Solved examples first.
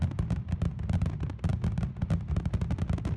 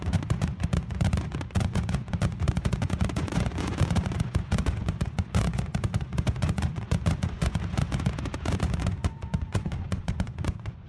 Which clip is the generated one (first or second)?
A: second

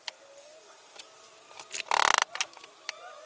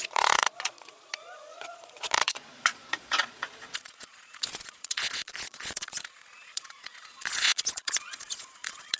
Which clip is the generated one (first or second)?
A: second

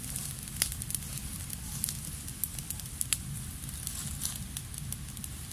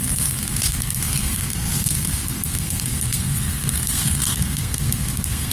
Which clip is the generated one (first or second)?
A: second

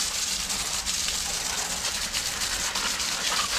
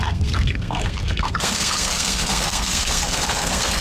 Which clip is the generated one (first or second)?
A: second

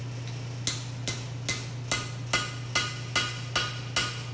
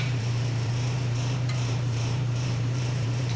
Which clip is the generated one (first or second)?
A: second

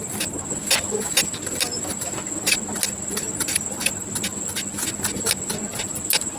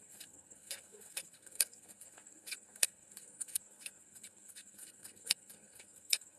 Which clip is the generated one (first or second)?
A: second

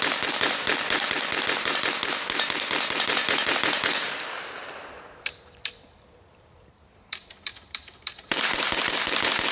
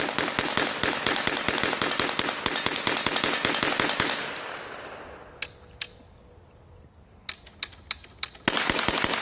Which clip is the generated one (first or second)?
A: first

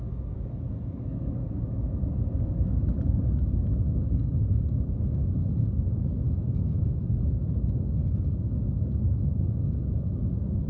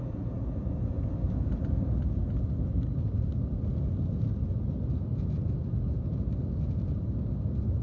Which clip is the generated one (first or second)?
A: first